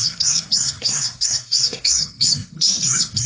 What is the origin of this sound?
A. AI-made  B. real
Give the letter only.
A